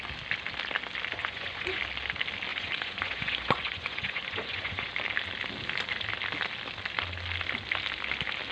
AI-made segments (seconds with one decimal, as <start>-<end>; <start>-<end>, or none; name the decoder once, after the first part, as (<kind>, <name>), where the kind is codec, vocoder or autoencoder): 1.2-1.8 (vocoder, Vocos); 2.5-4.9